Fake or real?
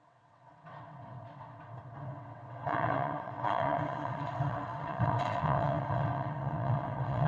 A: fake